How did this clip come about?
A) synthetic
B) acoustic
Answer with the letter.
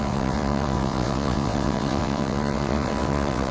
A